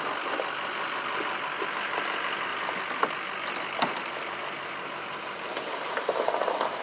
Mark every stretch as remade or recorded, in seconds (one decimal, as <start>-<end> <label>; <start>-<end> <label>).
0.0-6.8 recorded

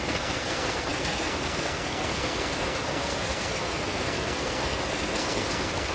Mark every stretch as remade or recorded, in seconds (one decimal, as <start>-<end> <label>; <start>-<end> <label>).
0.0-5.9 remade

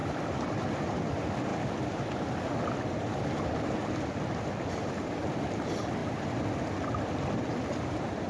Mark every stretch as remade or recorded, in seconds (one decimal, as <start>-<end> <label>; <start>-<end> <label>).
0.0-8.3 recorded

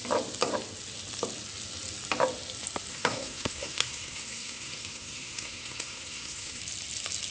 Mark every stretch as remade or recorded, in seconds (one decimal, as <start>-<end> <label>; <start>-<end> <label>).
0.0-2.9 recorded; 2.9-6.6 remade; 6.6-7.3 recorded

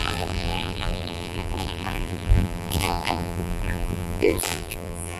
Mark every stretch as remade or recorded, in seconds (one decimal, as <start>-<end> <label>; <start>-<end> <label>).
0.0-5.2 remade

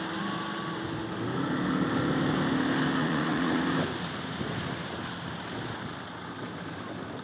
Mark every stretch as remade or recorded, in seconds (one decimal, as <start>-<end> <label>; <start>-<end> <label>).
0.0-3.0 recorded; 3.0-3.6 remade; 3.6-7.2 recorded